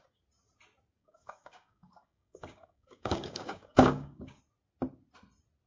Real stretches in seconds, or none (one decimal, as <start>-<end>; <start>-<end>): 0.0-1.0; 4.4-5.7